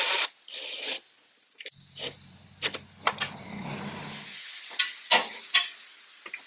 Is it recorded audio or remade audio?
recorded